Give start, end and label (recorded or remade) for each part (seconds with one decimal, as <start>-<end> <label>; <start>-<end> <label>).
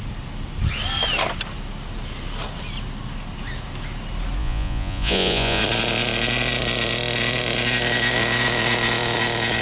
0.0-4.4 recorded; 4.4-5.6 remade; 5.6-9.6 recorded